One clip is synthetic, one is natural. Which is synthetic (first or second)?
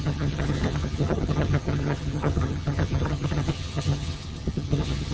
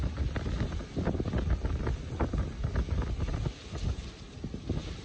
first